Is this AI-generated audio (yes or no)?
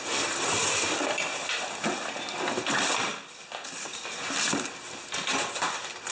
no